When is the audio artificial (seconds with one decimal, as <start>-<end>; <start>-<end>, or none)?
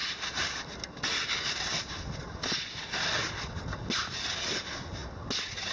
none